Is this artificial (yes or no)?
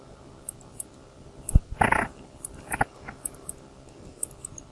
no